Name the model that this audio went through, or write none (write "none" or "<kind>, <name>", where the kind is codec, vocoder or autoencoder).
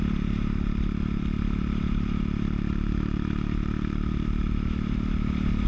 vocoder, BigVGAN v2